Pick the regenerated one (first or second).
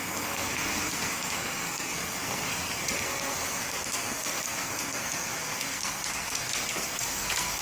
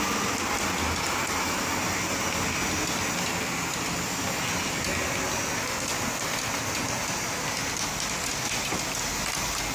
first